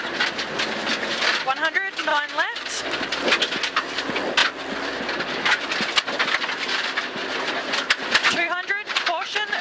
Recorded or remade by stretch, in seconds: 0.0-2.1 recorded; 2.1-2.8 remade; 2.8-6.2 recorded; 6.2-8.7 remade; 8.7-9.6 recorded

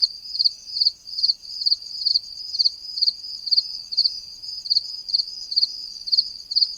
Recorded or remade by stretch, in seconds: 0.0-0.8 remade; 0.8-2.1 recorded; 2.1-3.3 remade; 3.3-4.0 recorded; 4.0-5.2 remade; 5.2-6.8 recorded

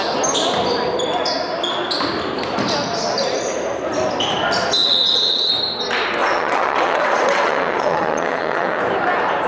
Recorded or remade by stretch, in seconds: 0.0-4.8 recorded; 4.8-5.5 remade; 5.5-6.2 recorded; 6.2-8.8 remade; 8.8-9.5 recorded

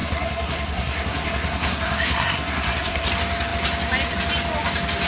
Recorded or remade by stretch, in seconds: 0.0-3.1 remade; 3.1-5.1 recorded

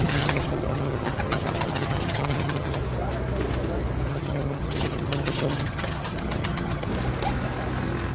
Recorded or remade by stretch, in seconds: 0.0-2.8 remade; 2.8-4.1 recorded; 4.1-6.9 remade; 6.9-8.1 recorded

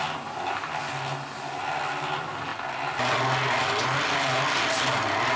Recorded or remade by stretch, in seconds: 0.0-5.4 recorded

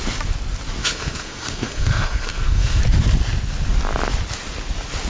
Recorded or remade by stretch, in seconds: 0.0-0.8 recorded; 0.8-2.8 remade; 2.8-5.1 recorded

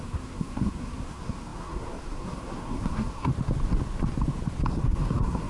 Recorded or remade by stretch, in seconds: 0.0-3.3 remade; 3.3-4.7 recorded; 4.7-5.5 remade